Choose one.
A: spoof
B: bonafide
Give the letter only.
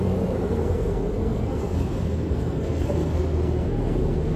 A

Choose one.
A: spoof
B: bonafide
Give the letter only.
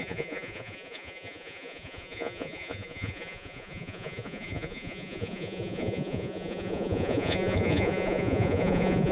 A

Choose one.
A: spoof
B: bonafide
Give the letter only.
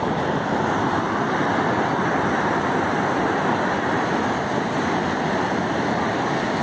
A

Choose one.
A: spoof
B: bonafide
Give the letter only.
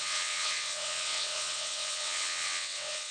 A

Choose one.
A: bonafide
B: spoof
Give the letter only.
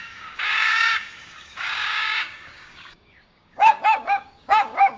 B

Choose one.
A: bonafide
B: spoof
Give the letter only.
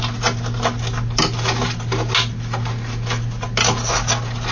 A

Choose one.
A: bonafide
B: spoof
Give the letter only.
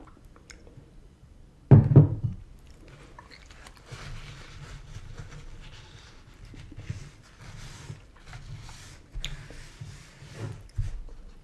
A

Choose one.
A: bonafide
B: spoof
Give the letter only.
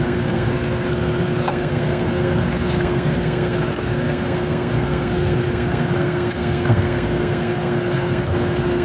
B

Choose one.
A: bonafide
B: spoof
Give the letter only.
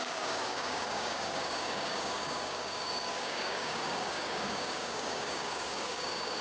B